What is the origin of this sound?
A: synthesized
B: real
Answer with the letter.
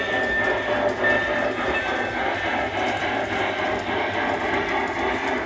B